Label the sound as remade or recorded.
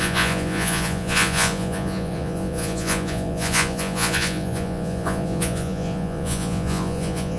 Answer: remade